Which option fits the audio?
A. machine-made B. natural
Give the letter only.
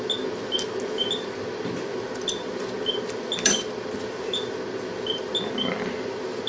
B